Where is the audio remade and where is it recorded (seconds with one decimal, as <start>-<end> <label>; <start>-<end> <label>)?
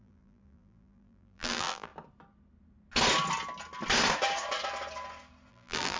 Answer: 0.0-1.9 remade; 1.9-5.5 recorded; 5.5-6.0 remade